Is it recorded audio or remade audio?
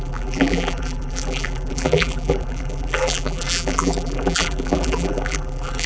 remade